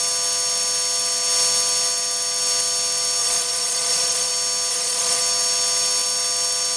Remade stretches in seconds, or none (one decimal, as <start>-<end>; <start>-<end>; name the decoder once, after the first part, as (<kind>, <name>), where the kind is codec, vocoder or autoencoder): 3.2-4.3 (vocoder, Vocos); 4.7-5.2